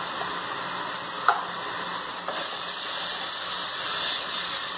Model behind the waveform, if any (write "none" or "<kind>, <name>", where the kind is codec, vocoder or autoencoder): none